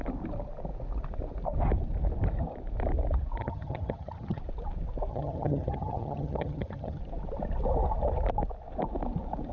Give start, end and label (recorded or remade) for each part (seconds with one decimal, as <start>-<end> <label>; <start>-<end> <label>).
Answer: 0.0-3.4 recorded; 3.4-4.4 remade; 4.4-5.1 recorded; 5.1-7.0 remade; 7.0-9.5 recorded